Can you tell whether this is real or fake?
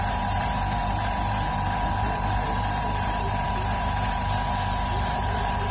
fake